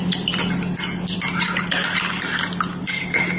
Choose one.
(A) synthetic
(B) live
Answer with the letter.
B